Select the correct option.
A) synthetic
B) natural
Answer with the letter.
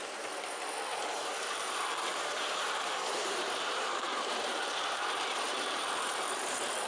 A